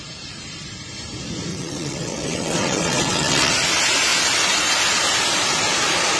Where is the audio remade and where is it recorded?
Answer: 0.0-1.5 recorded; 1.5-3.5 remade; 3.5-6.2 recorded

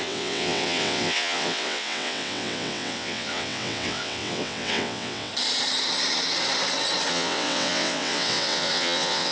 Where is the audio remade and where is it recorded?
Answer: 0.0-5.3 remade; 5.3-7.1 recorded; 7.1-9.3 remade